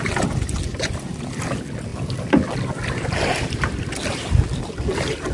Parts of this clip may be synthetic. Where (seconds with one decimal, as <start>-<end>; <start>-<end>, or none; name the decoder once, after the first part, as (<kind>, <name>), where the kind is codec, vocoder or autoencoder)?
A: 0.0-1.9 (vocoder, BigVGAN v2); 4.6-5.3